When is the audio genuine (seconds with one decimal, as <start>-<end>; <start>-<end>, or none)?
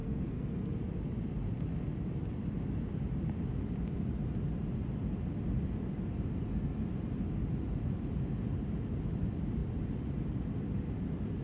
0.7-11.4